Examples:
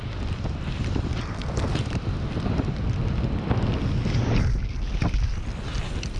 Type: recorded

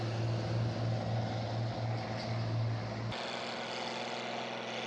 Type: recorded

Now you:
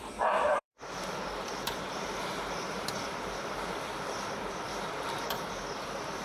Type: remade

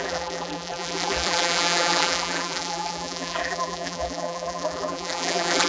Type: remade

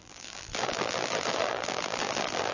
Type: remade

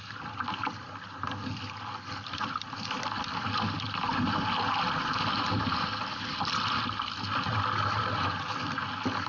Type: recorded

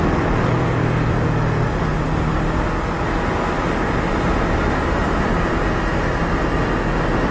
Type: recorded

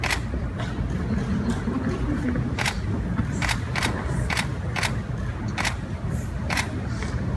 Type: recorded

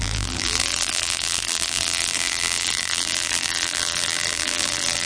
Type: remade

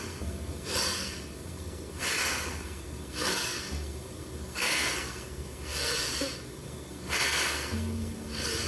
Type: remade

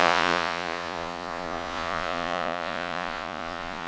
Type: remade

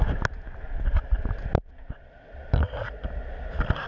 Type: recorded